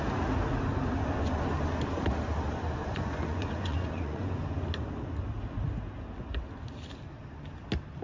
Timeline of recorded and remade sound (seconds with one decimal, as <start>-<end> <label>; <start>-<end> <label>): 0.0-2.8 recorded; 2.8-4.4 remade; 4.4-8.0 recorded